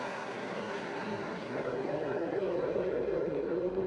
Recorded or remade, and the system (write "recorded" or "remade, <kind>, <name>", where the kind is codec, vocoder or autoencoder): remade, codec, SNAC